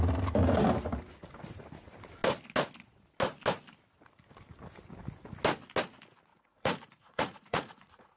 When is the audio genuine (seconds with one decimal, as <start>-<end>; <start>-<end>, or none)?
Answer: 0.0-6.3